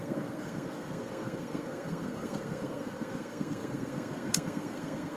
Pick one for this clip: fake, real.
fake